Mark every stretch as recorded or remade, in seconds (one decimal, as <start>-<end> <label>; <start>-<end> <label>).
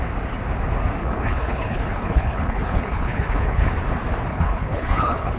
0.0-1.0 recorded; 1.0-3.7 remade; 3.7-4.3 recorded; 4.3-5.4 remade